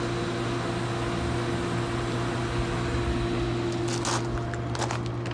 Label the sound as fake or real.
real